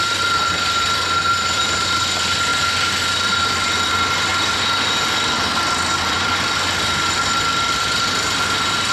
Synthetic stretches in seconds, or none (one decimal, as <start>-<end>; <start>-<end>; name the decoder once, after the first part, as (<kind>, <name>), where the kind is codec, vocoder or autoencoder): 0.0-4.3 (vocoder, BigVGAN v2); 6.0-8.9